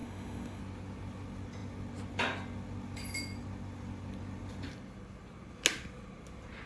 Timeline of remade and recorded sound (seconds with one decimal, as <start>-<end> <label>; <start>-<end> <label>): 0.0-0.6 remade; 0.6-6.7 recorded

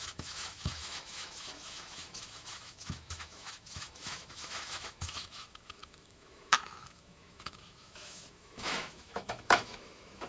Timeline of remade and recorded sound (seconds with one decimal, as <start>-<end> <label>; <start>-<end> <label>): 0.0-10.3 remade

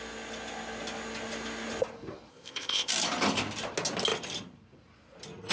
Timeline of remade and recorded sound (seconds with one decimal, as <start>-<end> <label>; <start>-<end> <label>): 0.0-2.3 recorded; 2.3-2.9 remade; 2.9-5.5 recorded

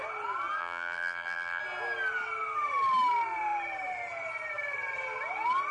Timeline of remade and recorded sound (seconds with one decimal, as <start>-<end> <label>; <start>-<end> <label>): 0.0-0.6 recorded; 0.6-1.6 remade; 1.6-5.7 recorded